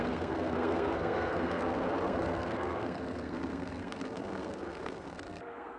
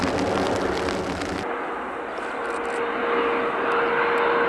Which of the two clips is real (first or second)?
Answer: second